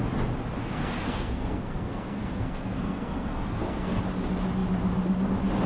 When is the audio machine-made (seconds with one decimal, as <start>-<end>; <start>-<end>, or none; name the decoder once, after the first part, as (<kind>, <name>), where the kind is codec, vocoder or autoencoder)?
0.6-4.0 (codec, SNAC)